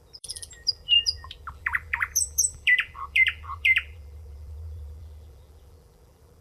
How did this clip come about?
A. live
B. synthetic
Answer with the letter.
B